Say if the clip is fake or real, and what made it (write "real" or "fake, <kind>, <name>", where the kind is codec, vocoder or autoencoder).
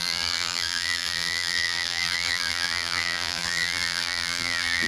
fake, vocoder, BigVGAN v2